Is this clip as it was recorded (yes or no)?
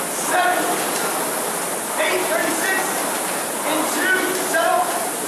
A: yes